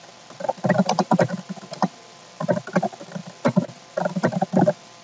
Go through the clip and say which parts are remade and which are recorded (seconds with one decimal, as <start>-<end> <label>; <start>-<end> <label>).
0.0-5.0 recorded